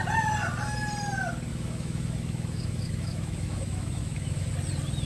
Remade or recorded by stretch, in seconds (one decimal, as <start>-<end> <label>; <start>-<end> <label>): 0.0-1.5 recorded; 1.5-4.5 remade; 4.5-5.0 recorded